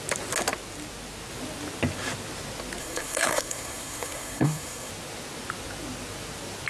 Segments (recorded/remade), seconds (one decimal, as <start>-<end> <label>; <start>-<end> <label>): 0.0-2.8 recorded; 2.8-4.9 remade; 4.9-6.7 recorded